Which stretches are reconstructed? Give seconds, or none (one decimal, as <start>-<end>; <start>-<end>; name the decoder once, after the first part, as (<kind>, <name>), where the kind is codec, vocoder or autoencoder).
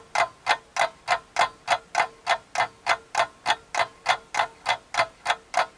none